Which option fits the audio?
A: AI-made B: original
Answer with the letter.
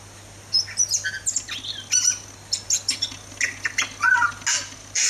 B